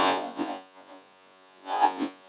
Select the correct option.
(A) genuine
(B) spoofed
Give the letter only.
B